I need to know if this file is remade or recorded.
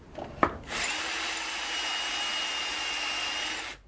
recorded